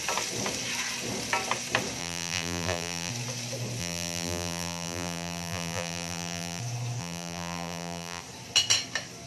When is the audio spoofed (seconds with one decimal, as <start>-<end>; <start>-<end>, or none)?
2.0-3.1; 3.8-6.6; 7.0-8.2